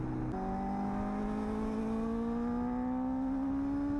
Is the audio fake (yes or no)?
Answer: no